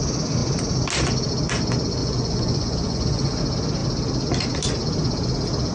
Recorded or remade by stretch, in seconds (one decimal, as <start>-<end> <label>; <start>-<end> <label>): 0.0-2.0 recorded; 2.0-3.4 remade; 3.4-5.7 recorded